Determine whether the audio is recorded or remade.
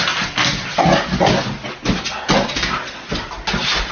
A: recorded